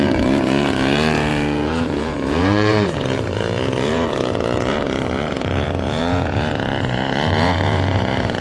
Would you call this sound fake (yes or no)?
yes